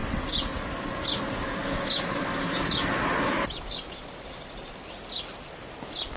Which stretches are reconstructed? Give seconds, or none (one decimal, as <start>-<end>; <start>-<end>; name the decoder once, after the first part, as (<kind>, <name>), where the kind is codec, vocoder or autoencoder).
none